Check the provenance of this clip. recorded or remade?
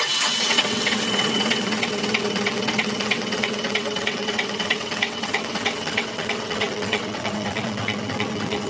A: remade